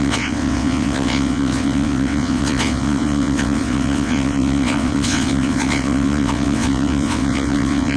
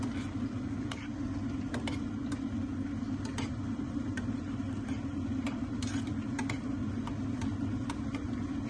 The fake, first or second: first